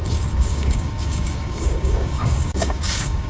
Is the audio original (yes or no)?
no